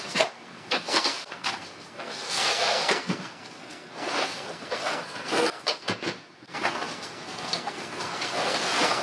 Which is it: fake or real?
fake